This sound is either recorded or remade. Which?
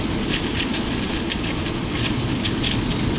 recorded